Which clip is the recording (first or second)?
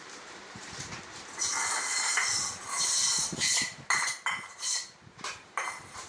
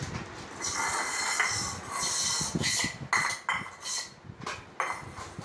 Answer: second